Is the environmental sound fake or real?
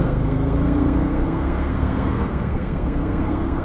fake